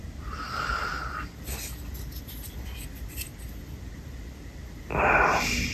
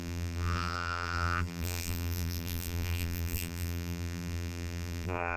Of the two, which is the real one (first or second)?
first